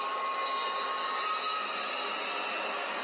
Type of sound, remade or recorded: recorded